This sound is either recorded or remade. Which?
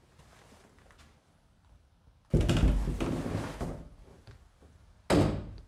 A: recorded